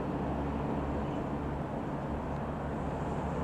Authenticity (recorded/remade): recorded